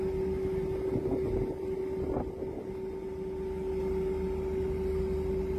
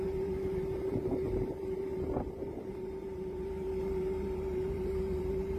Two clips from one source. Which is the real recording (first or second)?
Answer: first